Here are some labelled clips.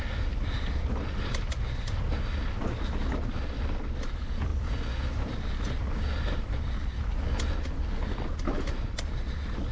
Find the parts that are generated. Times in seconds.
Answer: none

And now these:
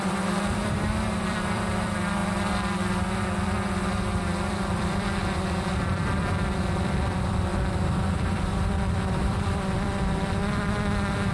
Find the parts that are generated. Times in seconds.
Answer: 0.0-2.2 (vocoder, BigVGAN v2); 4.7-7.5; 8.1-10.4

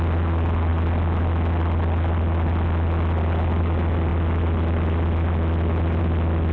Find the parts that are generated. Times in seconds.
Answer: none

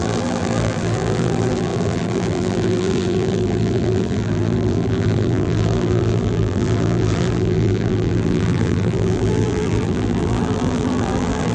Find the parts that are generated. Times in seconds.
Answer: 0.0-11.5 (vocoder, BigVGAN v2)

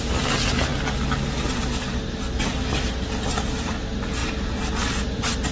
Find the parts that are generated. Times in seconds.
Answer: none

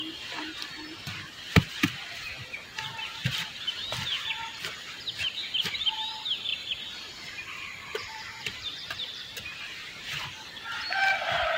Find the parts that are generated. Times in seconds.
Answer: 6.5-10.3 (vocoder, BigVGAN v2)

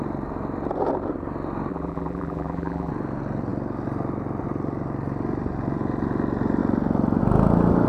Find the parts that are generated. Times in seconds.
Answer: 1.7-2.9 (vocoder, BigVGAN v2)

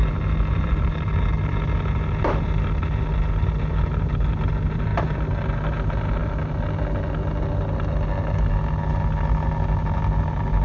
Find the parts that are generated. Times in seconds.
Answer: 0.0-1.2 (vocoder, BigVGAN v2)